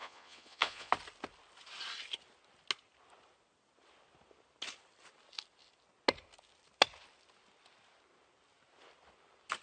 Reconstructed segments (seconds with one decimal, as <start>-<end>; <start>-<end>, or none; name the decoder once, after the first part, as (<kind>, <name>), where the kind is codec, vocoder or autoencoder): 0.0-0.9 (vocoder, Vocos)